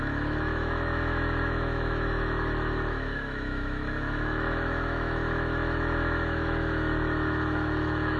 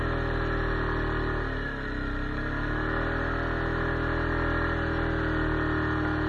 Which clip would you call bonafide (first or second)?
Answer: second